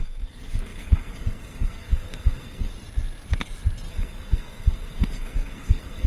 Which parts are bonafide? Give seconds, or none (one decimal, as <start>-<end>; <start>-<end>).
2.7-3.9